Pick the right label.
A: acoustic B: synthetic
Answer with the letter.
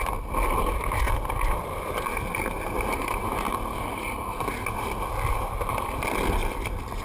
A